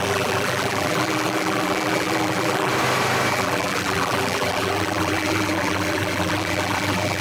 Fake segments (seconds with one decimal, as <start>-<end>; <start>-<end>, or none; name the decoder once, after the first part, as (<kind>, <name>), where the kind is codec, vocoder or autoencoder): 0.0-2.7 (vocoder, BigVGAN v2); 3.3-7.2